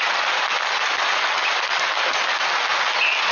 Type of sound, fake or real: real